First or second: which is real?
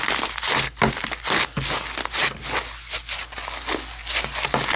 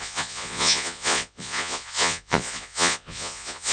first